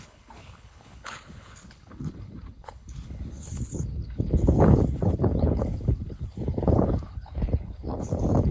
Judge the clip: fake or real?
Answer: fake